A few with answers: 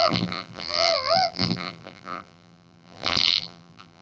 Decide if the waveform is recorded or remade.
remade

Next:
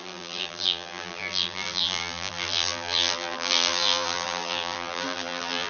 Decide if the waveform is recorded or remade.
remade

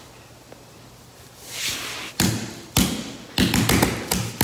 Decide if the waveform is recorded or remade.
recorded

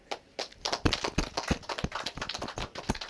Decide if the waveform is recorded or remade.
recorded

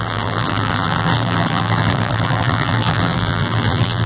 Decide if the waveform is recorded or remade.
remade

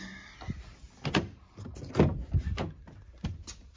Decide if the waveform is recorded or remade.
recorded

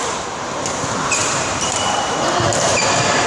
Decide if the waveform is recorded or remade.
remade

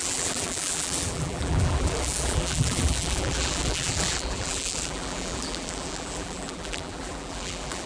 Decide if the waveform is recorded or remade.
remade